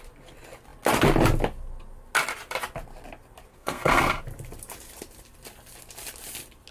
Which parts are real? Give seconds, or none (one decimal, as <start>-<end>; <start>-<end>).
0.0-3.5; 4.2-6.7